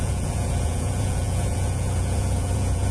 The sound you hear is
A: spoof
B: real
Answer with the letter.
A